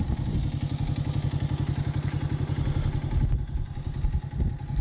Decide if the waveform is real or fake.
real